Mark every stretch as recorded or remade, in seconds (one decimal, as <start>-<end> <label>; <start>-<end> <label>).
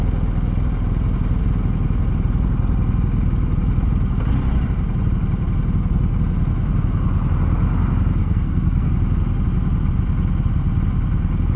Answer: 0.0-8.2 recorded; 8.2-8.9 remade; 8.9-11.6 recorded